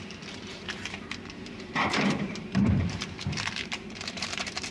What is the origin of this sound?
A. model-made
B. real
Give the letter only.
A